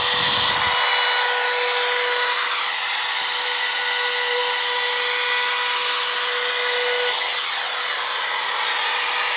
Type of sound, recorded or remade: recorded